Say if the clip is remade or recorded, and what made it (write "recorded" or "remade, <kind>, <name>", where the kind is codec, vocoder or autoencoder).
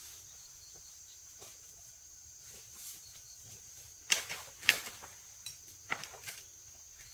remade, vocoder, BigVGAN v2